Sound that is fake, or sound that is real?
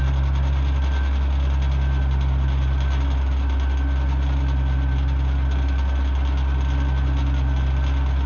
real